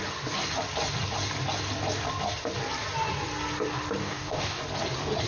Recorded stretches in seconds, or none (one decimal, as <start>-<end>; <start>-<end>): 0.0-4.0; 4.6-5.3